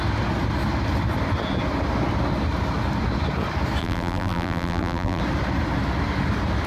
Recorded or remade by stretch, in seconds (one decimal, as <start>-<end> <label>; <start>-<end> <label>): 0.0-3.8 recorded; 3.8-5.2 remade; 5.2-6.7 recorded